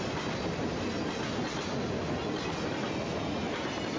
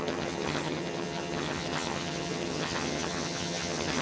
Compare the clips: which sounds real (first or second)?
first